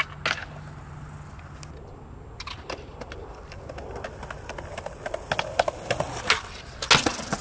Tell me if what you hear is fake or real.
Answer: real